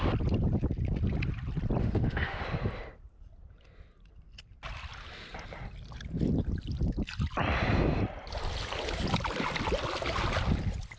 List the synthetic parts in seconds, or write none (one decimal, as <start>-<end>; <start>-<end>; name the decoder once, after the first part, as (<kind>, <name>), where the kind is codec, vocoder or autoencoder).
1.8-2.4 (autoencoder, DAC-VAE)